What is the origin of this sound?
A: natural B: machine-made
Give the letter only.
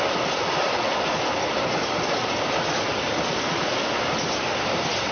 A